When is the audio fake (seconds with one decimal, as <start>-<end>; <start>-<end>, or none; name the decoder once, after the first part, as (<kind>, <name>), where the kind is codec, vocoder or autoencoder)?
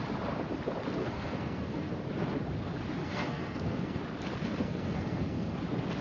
1.0-1.9 (codec, SNAC); 3.0-4.0; 4.4-5.6